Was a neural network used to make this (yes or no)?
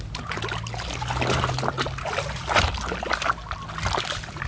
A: no